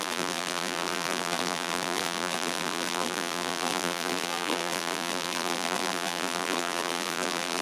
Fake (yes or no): yes